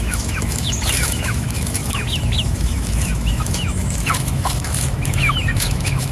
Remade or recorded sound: remade